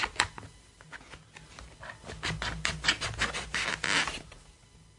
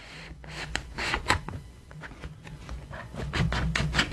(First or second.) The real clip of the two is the first